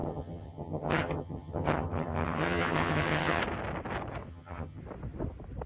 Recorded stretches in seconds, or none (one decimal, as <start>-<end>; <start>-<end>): 3.4-4.3; 4.8-5.7